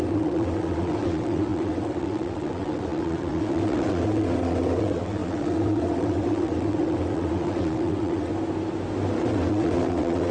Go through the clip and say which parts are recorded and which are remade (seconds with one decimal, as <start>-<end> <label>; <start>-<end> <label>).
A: 0.0-8.3 remade; 8.3-9.2 recorded; 9.2-10.3 remade